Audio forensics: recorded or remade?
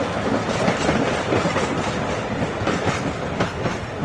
recorded